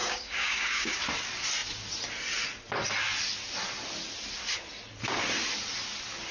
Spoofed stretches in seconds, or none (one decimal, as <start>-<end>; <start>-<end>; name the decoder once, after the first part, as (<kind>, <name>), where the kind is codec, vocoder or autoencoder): 0.0-1.0 (codec, DAC)